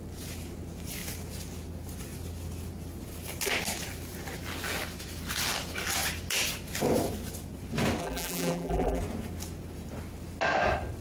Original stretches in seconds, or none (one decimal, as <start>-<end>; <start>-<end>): 0.0-8.0; 9.0-11.0